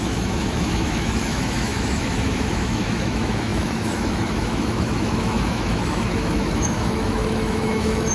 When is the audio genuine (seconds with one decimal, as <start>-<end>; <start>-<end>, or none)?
none